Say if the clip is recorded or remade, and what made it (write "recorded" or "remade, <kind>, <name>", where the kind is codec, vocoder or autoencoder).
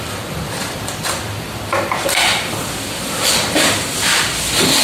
remade, vocoder, BigVGAN v2